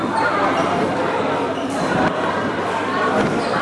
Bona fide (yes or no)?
no